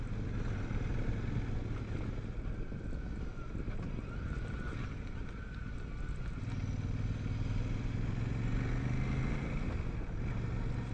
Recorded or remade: recorded